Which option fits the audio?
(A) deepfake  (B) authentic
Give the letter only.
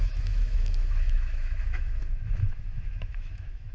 A